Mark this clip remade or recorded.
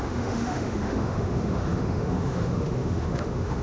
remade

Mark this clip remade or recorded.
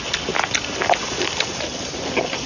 recorded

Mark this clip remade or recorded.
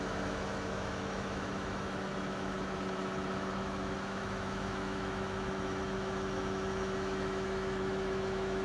remade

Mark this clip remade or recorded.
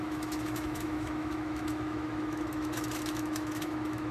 remade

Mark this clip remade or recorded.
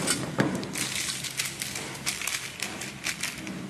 recorded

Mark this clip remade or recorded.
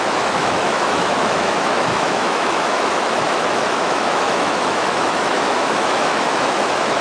remade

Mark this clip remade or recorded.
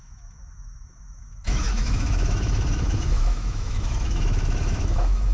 remade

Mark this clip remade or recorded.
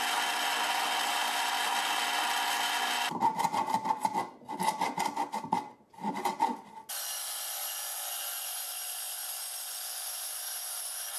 recorded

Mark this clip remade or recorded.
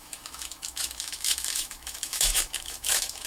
remade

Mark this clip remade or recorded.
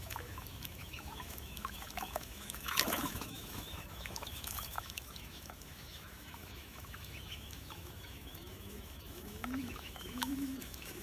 remade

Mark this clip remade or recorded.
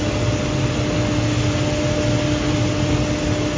recorded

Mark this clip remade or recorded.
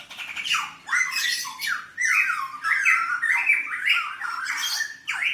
recorded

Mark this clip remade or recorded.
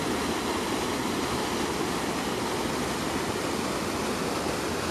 recorded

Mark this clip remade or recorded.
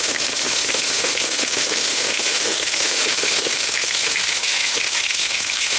remade